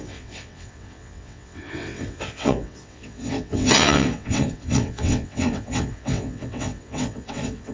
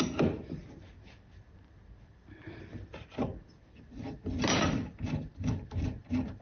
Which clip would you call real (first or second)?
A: second